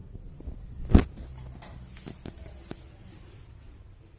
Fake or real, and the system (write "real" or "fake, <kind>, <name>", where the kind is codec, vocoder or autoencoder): real